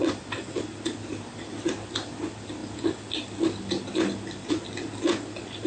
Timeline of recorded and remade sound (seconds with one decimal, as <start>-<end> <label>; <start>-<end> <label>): 0.0-5.7 recorded